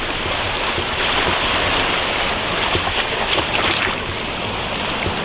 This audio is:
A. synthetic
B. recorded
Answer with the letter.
A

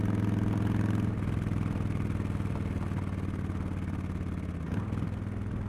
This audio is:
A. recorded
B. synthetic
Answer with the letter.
A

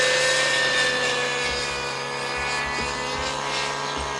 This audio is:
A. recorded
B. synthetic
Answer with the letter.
A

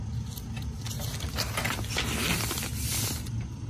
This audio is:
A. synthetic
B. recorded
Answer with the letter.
B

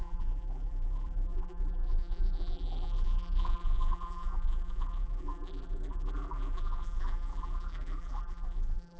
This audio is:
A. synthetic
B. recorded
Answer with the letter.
A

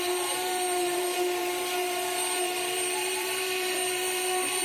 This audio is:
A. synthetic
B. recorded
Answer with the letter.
A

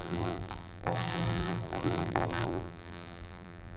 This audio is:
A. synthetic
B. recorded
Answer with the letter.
A